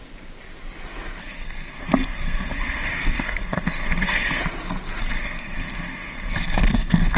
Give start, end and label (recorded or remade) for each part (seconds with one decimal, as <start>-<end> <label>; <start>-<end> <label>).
0.0-1.2 recorded; 1.2-4.4 remade; 4.4-5.0 recorded; 5.0-7.2 remade